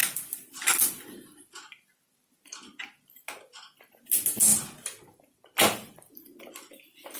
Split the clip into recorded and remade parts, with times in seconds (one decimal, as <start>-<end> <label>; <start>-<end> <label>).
0.0-7.2 recorded